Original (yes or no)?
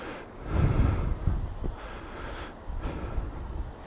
yes